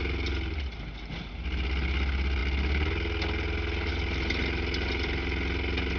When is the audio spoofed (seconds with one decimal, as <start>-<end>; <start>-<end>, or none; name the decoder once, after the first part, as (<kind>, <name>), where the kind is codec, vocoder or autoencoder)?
none